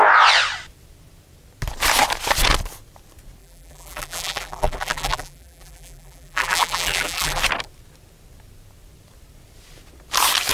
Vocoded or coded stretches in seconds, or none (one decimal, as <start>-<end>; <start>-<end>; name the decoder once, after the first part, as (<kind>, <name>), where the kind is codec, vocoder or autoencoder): 3.4-7.4 (vocoder, BigVGAN v2)